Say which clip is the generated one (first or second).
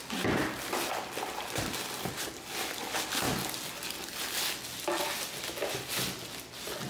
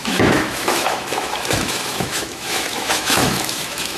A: second